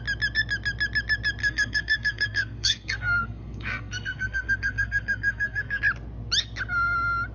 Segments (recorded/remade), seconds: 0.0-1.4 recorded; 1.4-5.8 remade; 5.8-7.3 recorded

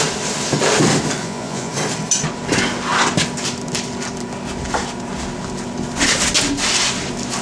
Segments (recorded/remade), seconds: 0.0-1.2 recorded; 1.2-1.7 remade; 1.7-7.4 recorded

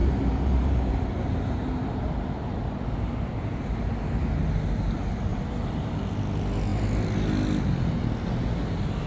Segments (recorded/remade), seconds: 0.0-2.6 remade; 2.6-5.3 recorded; 5.3-5.9 remade; 5.9-9.1 recorded